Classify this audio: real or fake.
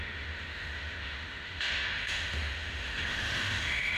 fake